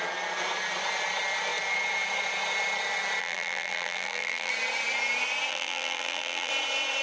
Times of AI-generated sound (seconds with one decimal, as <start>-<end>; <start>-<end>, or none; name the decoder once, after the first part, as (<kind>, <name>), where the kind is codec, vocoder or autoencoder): 3.2-4.5 (vocoder, BigVGAN v2); 5.5-6.5